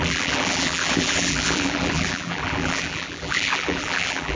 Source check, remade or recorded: remade